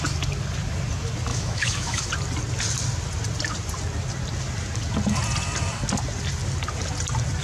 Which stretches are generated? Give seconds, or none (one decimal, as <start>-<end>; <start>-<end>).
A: 1.3-2.1